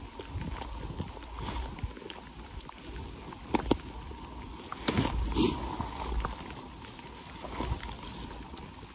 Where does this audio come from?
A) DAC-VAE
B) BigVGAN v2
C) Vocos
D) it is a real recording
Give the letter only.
D